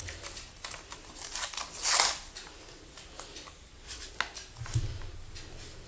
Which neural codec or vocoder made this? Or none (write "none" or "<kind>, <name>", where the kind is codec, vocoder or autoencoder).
none